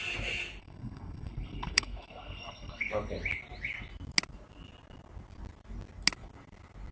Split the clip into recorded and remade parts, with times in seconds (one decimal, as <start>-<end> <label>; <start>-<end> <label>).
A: 0.0-0.6 recorded; 0.6-2.9 remade; 2.9-6.9 recorded